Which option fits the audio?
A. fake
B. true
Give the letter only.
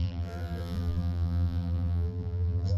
A